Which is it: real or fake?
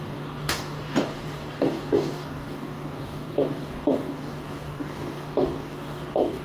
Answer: fake